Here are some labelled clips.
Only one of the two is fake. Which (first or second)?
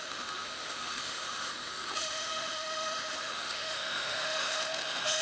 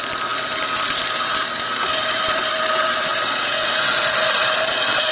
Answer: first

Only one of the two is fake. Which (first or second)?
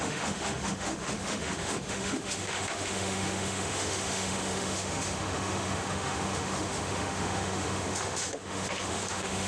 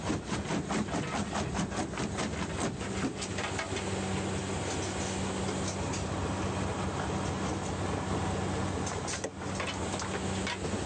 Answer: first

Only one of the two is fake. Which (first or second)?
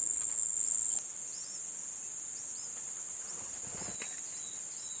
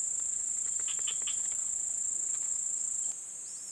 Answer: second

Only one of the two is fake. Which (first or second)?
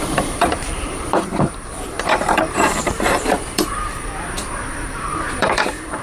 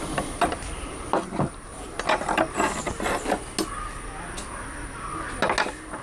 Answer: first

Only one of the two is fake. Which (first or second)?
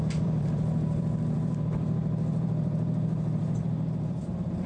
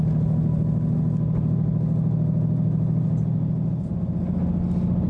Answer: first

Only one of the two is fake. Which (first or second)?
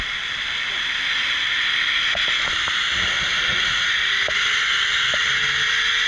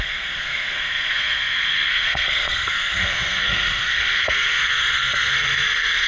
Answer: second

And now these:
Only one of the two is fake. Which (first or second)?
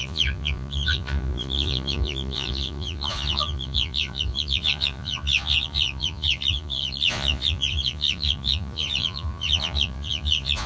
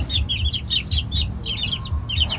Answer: first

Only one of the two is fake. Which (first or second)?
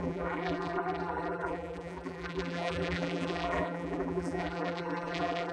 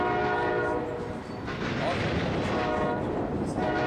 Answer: first